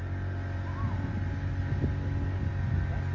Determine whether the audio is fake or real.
real